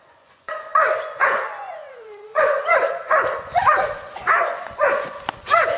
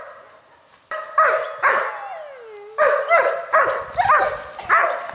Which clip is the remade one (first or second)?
first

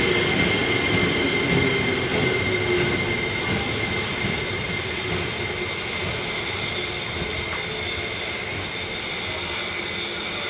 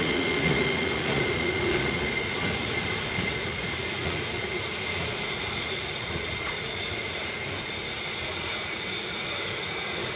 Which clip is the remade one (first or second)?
second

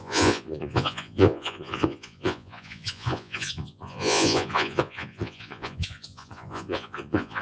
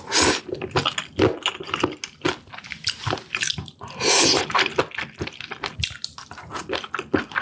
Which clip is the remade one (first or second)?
first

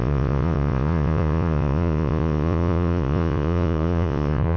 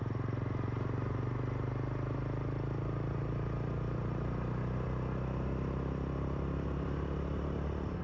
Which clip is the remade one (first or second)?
first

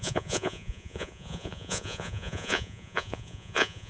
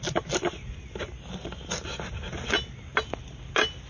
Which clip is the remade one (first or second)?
first